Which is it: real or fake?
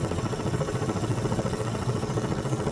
fake